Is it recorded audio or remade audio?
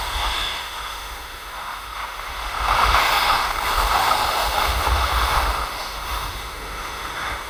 remade